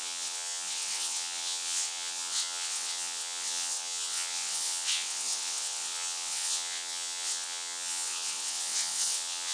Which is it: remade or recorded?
remade